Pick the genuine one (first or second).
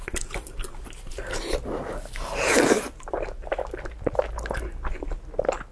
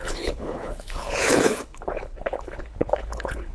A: first